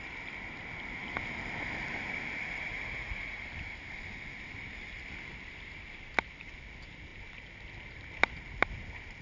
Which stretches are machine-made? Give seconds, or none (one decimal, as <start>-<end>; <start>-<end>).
2.7-3.4